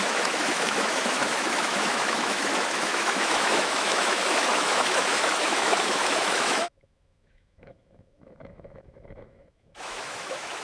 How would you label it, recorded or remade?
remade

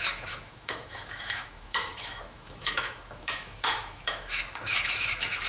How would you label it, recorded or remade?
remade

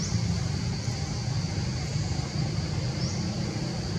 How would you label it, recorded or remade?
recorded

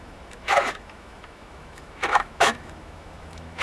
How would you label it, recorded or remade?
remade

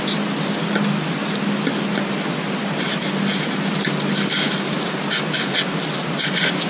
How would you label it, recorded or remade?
recorded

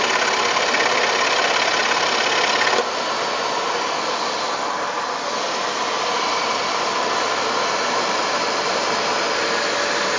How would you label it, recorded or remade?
recorded